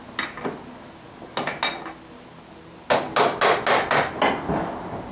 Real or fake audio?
real